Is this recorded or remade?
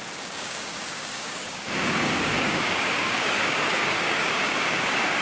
remade